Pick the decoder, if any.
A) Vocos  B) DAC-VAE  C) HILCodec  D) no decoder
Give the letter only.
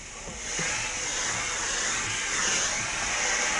D